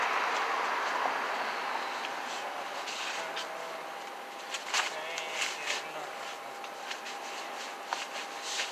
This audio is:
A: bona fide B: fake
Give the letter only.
A